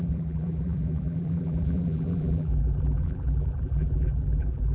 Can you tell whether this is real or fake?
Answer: fake